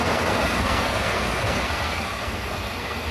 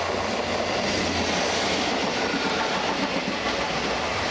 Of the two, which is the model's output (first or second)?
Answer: first